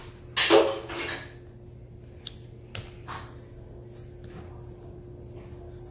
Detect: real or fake real